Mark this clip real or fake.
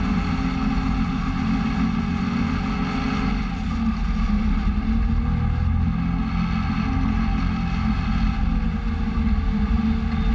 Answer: real